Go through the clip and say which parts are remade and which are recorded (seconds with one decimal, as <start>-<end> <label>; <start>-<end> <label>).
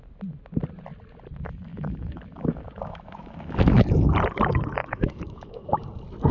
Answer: 0.0-1.7 recorded; 1.7-4.1 remade; 4.1-4.8 recorded; 4.8-5.7 remade; 5.7-6.3 recorded